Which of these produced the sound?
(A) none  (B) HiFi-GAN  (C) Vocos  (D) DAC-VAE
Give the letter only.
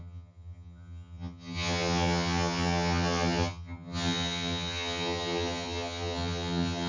B